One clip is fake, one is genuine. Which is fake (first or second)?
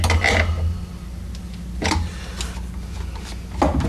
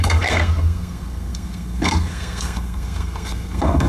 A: second